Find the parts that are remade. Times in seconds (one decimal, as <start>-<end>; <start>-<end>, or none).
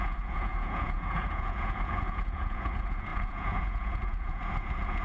0.0-5.0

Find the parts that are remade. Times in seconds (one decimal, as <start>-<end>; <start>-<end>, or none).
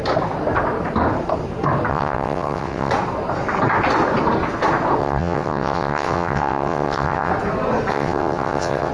1.9-2.9; 5.0-7.3; 7.9-8.9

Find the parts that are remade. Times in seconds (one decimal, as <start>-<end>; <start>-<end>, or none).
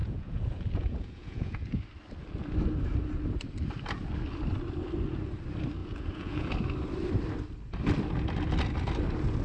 0.0-1.8; 5.8-6.5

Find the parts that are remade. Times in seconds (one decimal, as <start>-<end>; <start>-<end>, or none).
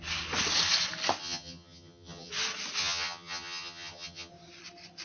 1.2-2.3; 2.8-4.3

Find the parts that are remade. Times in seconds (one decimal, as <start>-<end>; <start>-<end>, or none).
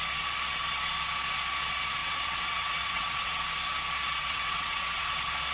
2.0-3.4; 4.2-5.1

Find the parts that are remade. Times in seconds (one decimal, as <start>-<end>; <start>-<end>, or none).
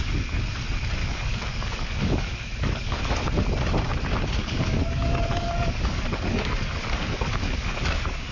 1.0-3.0; 4.4-8.3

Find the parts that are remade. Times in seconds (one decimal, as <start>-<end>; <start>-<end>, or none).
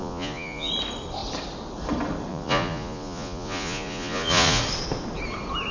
0.0-0.7; 2.3-4.6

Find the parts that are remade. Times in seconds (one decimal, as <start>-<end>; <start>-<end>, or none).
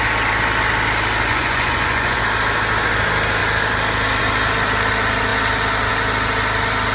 1.3-2.2